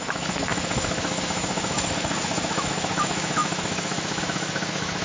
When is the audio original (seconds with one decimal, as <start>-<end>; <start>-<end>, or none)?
none